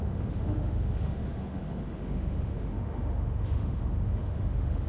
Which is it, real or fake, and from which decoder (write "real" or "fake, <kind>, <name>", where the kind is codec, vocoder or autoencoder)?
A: fake, autoencoder, DAC-VAE